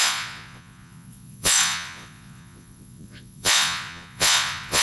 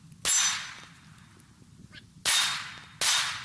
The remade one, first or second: first